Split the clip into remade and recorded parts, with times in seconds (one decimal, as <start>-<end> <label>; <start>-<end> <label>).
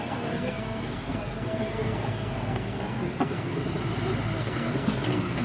0.0-3.6 remade; 3.6-4.4 recorded; 4.4-5.4 remade